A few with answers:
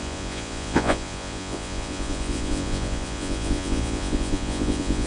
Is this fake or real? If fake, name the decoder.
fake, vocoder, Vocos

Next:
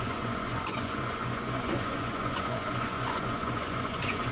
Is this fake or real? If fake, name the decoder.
fake, vocoder, Vocos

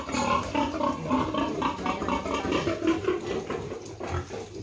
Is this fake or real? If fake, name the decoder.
real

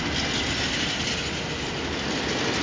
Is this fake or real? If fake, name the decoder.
real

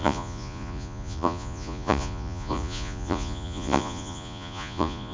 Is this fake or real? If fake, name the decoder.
fake, vocoder, Vocos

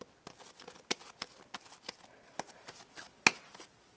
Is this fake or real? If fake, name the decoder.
real